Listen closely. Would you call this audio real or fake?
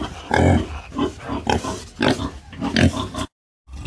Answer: real